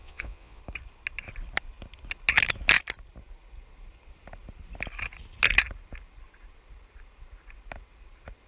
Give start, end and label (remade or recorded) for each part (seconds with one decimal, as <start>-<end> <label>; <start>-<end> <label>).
0.0-0.6 remade; 0.6-8.5 recorded